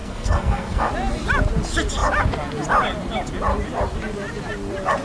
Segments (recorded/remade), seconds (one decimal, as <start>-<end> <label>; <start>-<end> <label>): 0.0-0.9 remade; 0.9-5.0 recorded